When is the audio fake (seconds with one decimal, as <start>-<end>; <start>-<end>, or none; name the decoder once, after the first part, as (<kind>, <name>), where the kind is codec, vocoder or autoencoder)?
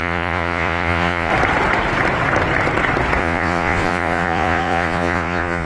0.0-1.3 (vocoder, Vocos); 3.2-5.7